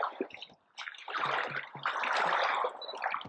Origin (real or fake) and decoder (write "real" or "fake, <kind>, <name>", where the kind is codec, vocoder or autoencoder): real